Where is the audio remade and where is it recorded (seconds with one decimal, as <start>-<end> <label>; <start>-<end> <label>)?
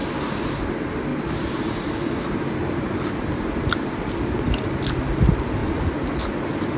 0.0-1.1 recorded; 1.1-4.0 remade; 4.0-5.6 recorded; 5.6-6.8 remade